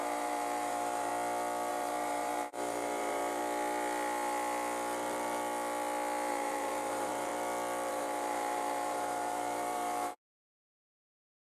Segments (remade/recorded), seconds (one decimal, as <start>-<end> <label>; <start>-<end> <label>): 0.0-1.1 remade; 1.1-1.7 recorded; 1.7-3.4 remade; 3.4-6.3 recorded; 6.3-7.3 remade; 7.3-7.9 recorded; 7.9-11.6 remade